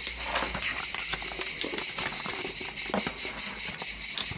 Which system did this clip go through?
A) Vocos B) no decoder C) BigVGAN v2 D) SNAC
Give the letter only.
B